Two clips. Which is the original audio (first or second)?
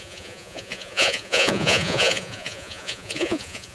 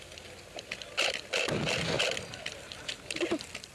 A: second